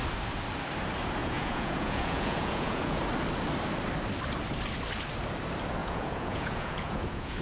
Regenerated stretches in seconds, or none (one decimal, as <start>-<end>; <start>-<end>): 1.2-3.0; 5.8-7.4